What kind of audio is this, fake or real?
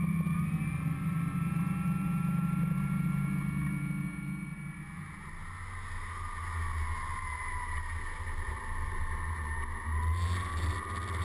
real